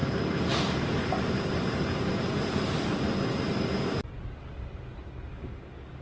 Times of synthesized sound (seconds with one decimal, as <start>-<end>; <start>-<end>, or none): 5.3-6.0